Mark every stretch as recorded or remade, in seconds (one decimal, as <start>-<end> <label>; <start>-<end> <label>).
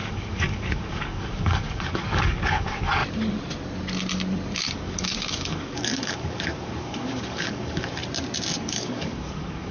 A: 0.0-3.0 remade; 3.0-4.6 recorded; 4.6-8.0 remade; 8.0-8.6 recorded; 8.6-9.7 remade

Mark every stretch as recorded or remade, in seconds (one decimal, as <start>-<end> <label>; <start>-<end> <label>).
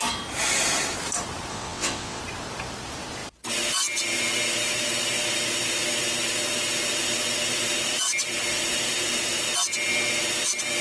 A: 0.0-1.5 recorded; 1.5-2.2 remade; 2.2-10.8 recorded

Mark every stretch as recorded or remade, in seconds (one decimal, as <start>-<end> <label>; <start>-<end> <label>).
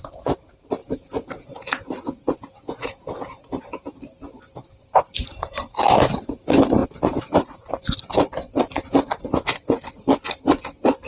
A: 0.0-0.8 recorded; 0.8-3.8 remade; 3.8-11.1 recorded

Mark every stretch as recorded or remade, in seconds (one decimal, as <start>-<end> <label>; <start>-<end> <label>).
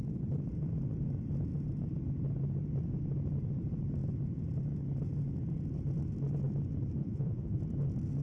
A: 0.0-7.0 recorded; 7.0-7.6 remade; 7.6-8.2 recorded